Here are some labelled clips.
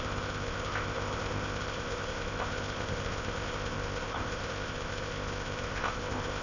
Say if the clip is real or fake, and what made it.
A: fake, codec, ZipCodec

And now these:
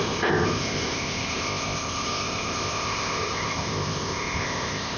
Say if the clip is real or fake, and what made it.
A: fake, codec, ZipCodec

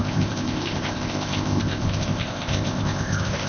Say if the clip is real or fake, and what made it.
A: fake, codec, ZipCodec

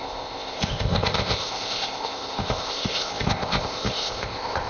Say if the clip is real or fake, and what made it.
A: fake, codec, ZipCodec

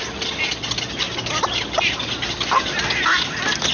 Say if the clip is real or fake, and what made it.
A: real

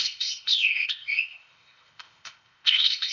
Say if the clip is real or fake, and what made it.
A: fake, codec, ZipCodec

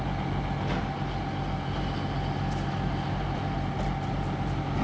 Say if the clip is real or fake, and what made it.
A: real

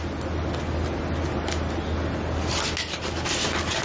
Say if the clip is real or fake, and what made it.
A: real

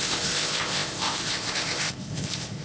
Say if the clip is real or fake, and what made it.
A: fake, codec, ZipCodec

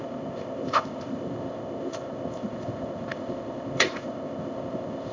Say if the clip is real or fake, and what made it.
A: fake, codec, ZipCodec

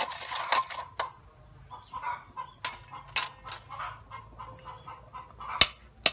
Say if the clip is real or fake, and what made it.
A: real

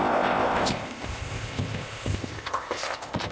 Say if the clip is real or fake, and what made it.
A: fake, codec, ZipCodec